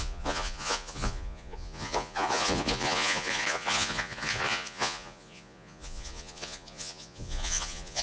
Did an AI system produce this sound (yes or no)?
yes